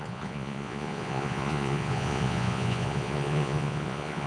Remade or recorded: remade